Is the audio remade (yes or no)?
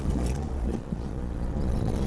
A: yes